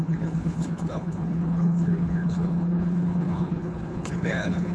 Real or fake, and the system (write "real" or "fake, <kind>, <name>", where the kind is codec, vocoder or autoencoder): fake, codec, HILCodec